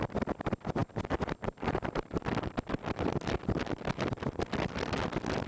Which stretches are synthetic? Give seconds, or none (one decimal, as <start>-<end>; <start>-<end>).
none